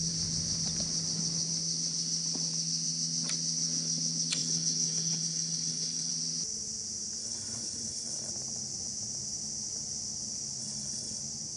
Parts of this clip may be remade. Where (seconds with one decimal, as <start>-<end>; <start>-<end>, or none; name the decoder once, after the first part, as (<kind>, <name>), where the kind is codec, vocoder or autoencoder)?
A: 4.4-6.1 (codec, HILCodec); 7.2-8.3; 10.6-11.2